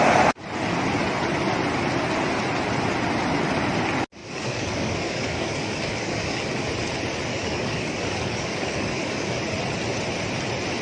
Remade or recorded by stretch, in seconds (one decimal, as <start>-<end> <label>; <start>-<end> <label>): 0.0-4.2 recorded; 4.2-6.7 remade; 6.7-7.3 recorded; 7.3-9.4 remade; 9.4-10.8 recorded